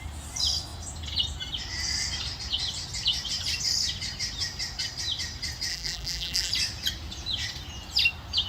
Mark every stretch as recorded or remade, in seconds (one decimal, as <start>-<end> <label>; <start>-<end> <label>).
0.0-5.7 recorded; 5.7-6.5 remade; 6.5-8.5 recorded